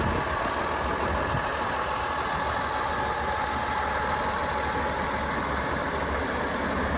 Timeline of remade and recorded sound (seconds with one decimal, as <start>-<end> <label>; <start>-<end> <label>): 0.0-7.0 recorded